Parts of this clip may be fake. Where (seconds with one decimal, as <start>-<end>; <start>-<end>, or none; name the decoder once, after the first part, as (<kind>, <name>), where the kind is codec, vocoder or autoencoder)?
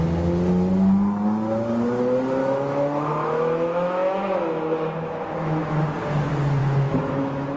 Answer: 2.4-5.8 (autoencoder, DAC-VAE); 6.6-7.6